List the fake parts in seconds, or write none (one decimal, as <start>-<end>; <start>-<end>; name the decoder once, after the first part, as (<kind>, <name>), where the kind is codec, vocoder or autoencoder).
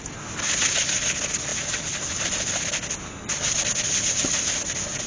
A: none